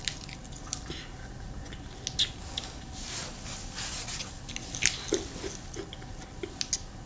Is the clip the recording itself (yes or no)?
yes